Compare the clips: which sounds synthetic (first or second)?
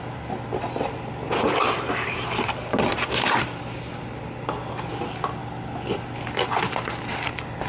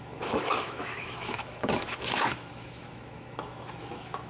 second